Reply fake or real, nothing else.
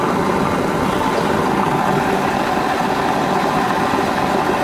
real